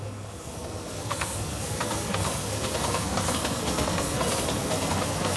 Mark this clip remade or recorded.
remade